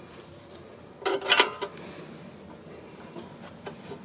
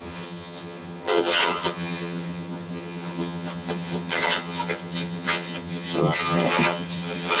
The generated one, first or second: second